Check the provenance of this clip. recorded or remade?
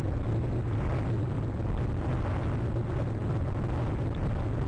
recorded